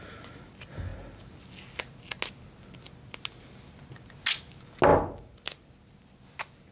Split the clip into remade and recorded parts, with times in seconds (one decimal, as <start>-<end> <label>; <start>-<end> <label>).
0.0-6.7 recorded